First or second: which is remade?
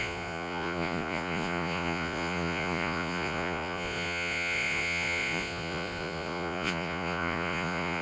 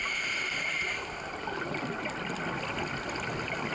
first